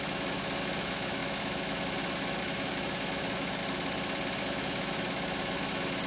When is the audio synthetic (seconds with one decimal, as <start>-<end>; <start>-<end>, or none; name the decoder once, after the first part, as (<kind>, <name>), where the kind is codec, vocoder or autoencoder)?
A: 0.0-3.6 (autoencoder, DAC-VAE); 4.4-6.1

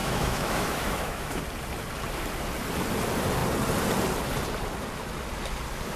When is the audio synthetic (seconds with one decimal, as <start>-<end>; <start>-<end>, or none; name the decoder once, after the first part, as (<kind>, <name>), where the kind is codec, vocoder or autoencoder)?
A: 0.0-1.4 (autoencoder, DAC-VAE)

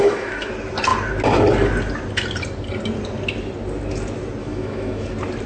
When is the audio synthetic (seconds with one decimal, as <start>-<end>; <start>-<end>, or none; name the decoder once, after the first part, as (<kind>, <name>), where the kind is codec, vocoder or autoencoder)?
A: 0.0-0.5 (autoencoder, DAC-VAE); 4.4-5.1

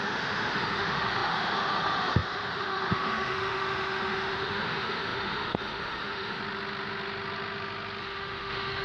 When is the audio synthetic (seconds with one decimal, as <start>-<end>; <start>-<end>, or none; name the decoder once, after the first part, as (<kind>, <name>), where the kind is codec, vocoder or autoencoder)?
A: 0.0-6.4 (autoencoder, DAC-VAE); 8.0-8.8